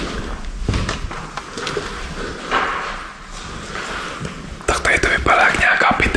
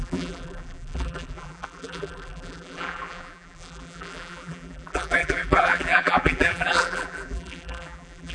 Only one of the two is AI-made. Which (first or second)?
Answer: second